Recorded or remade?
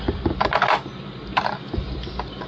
remade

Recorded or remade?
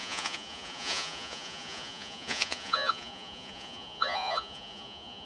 remade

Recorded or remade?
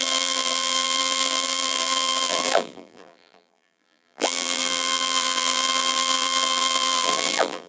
remade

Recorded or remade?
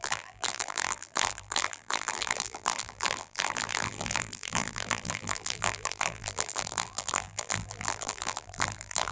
remade